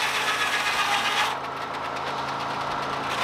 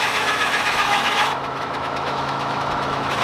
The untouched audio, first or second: first